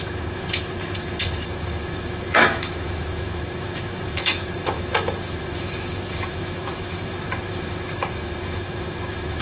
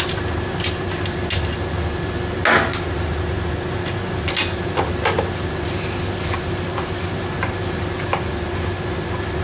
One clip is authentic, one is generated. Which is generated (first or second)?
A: first